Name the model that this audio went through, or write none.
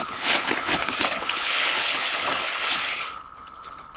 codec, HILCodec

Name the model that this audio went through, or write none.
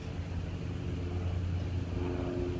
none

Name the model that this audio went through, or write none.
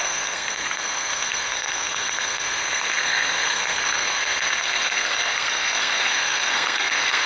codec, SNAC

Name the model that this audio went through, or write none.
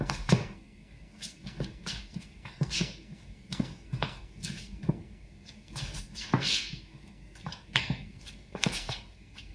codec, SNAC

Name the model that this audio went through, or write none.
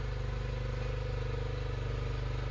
none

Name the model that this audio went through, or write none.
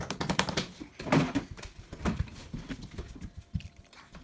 none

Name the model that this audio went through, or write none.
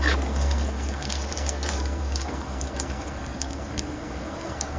codec, SNAC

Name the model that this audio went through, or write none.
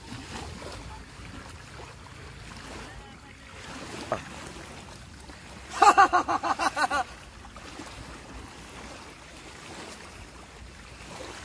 none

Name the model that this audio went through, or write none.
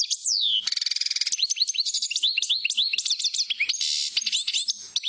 none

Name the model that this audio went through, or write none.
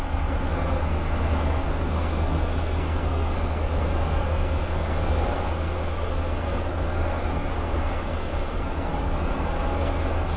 codec, SNAC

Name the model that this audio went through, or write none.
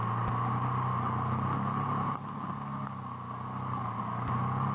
none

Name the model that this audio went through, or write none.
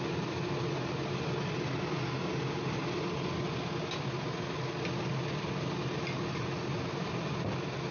none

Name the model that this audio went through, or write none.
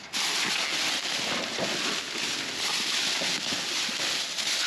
none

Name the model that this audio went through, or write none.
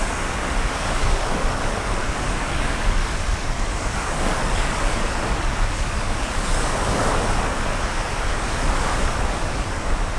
codec, DAC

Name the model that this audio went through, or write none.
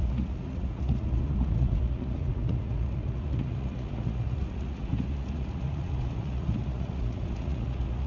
vocoder, Vocos